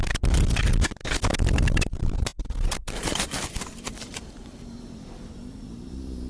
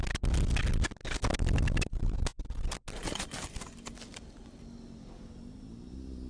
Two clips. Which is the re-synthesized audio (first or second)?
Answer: first